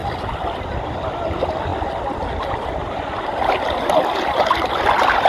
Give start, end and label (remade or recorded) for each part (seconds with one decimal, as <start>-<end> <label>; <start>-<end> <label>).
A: 0.0-5.3 recorded